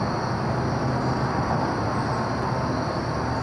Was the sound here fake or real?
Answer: real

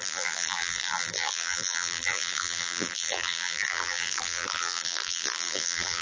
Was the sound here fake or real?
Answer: fake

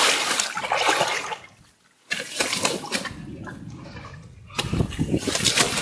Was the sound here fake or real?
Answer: real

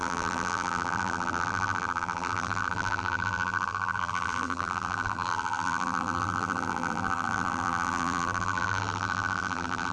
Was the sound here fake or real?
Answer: fake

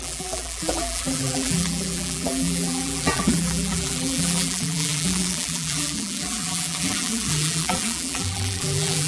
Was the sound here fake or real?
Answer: fake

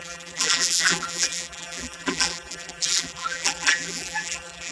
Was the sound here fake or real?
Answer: fake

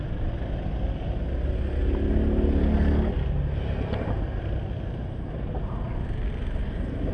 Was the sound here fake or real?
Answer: real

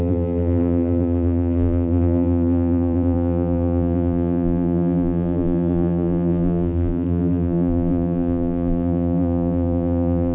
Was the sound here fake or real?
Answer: fake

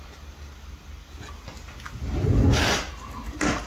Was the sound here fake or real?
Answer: real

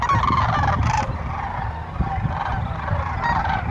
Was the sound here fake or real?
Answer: real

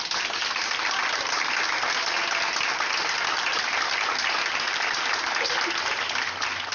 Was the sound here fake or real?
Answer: real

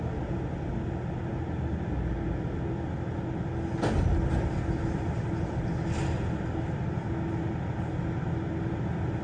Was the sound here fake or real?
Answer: real